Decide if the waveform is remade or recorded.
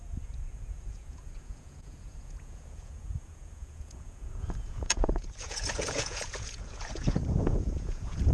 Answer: remade